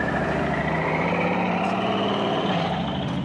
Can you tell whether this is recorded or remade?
remade